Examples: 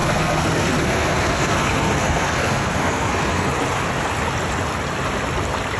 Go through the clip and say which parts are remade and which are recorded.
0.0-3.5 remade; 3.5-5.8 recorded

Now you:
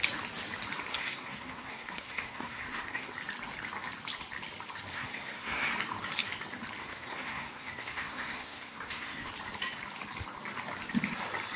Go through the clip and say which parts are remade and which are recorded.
0.0-0.9 recorded; 0.9-3.1 remade; 3.1-4.9 recorded; 4.9-5.7 remade; 5.7-6.8 recorded; 6.8-9.3 remade; 9.3-11.6 recorded

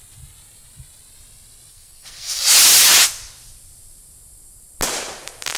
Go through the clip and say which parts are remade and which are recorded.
0.0-1.7 recorded; 1.7-2.4 remade; 2.4-5.6 recorded

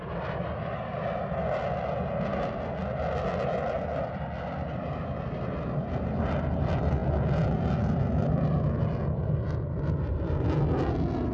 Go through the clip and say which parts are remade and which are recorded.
0.0-11.3 recorded

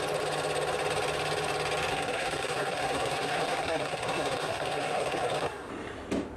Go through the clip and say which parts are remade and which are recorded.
0.0-1.9 recorded; 1.9-5.7 remade; 5.7-6.4 recorded

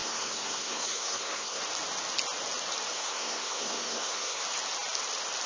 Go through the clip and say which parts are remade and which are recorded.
0.0-1.6 remade; 1.6-2.9 recorded; 2.9-4.4 remade; 4.4-5.5 recorded

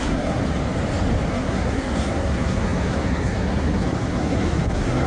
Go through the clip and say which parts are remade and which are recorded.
0.0-0.4 remade; 0.4-1.3 recorded; 1.3-5.1 remade